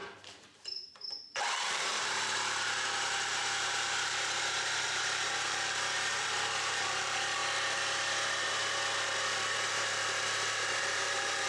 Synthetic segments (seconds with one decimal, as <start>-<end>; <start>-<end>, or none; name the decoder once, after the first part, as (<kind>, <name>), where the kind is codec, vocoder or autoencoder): 0.0-7.4 (vocoder, BigVGAN v2); 9.7-11.5